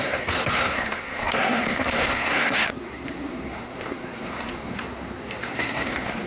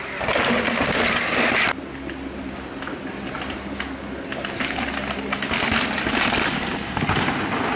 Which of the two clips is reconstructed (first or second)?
first